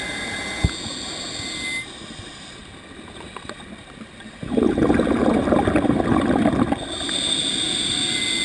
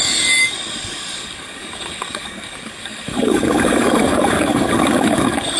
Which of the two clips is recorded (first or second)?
first